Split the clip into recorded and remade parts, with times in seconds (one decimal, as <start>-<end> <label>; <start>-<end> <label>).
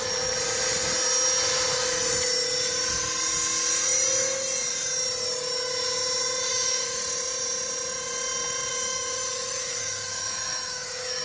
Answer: 0.0-6.5 recorded; 6.5-7.0 remade; 7.0-8.7 recorded; 8.7-11.2 remade